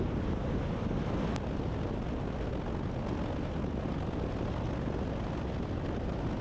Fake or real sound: real